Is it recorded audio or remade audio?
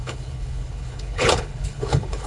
remade